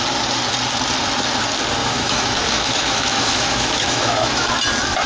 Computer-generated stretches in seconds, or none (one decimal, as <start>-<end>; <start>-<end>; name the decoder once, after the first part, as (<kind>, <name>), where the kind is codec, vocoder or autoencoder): 1.8-4.5 (autoencoder, DAC-VAE)